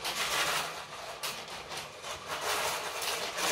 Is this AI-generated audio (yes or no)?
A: no